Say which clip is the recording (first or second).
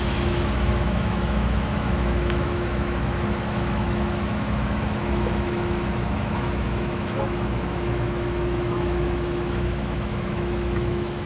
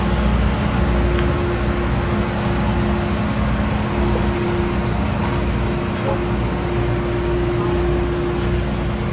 second